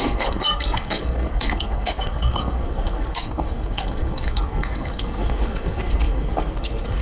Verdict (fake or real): fake